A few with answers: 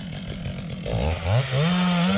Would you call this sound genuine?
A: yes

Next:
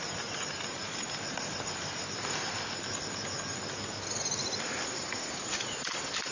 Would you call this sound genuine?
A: yes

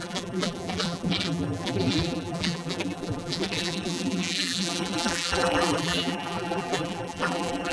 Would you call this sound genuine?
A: no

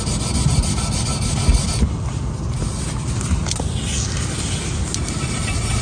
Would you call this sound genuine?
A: yes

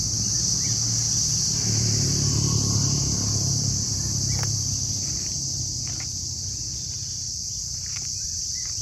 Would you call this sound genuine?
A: no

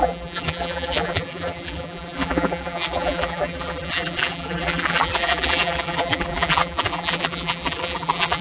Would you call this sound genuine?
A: no